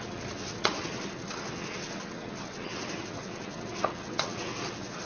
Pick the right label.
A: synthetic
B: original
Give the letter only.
A